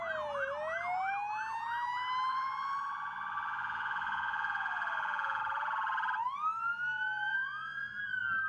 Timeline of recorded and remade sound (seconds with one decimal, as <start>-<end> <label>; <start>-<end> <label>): 0.0-2.3 recorded; 2.3-5.4 remade; 5.4-7.3 recorded; 7.3-8.0 remade; 8.0-8.5 recorded